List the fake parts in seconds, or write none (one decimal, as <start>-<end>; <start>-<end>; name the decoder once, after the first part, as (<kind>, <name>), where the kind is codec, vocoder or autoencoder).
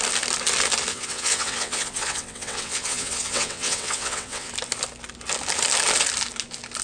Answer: 0.9-4.5 (vocoder, WaveNeXt)